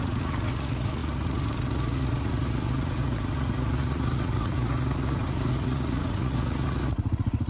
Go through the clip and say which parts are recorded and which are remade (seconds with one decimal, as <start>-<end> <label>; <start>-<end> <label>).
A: 0.0-7.5 remade